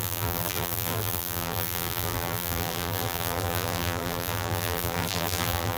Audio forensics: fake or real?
fake